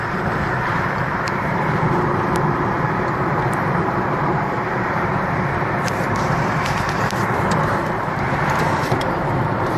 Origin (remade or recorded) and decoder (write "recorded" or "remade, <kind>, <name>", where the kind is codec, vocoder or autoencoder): remade, vocoder, BigVGAN v2